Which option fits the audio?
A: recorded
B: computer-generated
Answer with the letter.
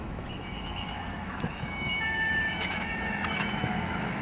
B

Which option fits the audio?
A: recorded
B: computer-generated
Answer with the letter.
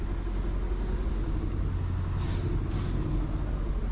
A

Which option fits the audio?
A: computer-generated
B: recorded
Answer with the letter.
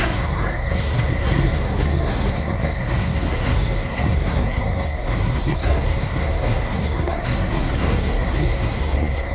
A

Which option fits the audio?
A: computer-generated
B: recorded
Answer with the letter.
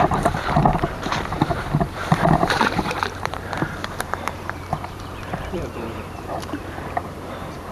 A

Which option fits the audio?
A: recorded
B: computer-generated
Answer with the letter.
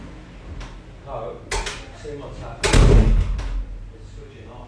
A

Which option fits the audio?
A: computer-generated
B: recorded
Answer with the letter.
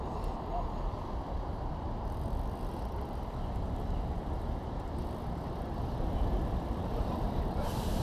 A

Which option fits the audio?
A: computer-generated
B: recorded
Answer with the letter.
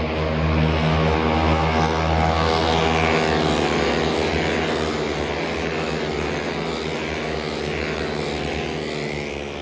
B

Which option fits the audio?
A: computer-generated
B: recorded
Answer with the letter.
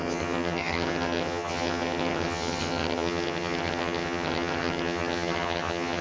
A